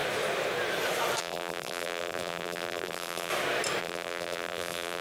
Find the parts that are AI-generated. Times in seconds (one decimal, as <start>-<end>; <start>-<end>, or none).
1.2-3.3; 3.8-5.0